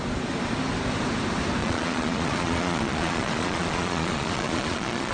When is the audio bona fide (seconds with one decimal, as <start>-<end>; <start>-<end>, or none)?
0.0-1.6